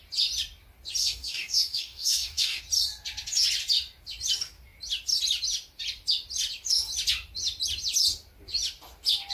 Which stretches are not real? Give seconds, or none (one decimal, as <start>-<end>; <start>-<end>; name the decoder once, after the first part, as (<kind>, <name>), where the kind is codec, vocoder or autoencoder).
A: 1.0-2.6 (codec, DAC)